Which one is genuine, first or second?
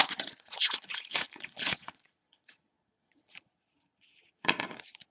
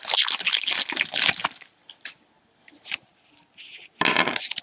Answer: second